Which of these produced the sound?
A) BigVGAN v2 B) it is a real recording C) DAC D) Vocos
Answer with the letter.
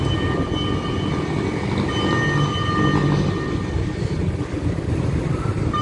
B